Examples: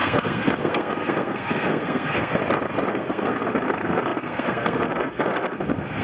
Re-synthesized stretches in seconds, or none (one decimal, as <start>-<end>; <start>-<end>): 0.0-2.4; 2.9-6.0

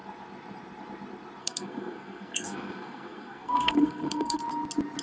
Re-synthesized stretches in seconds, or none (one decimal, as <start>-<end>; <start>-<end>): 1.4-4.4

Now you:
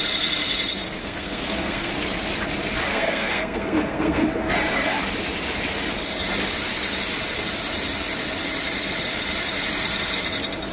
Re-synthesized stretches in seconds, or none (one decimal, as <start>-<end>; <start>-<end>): 1.0-1.9; 2.9-4.2